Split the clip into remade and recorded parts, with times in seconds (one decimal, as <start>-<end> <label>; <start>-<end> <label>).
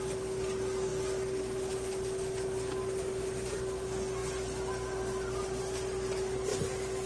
0.0-7.1 recorded